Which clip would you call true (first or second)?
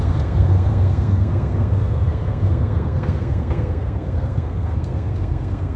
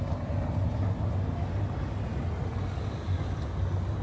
second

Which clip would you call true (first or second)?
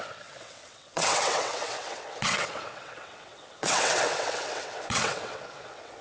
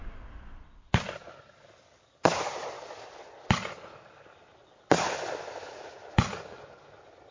second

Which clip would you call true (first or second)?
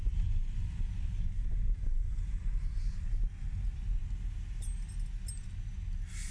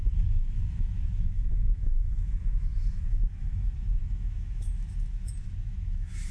first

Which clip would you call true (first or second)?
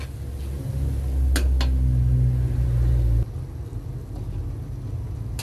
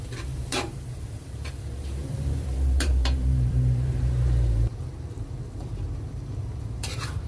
first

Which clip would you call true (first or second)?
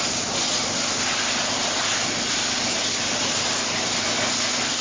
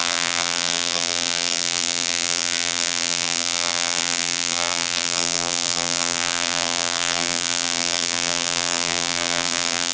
first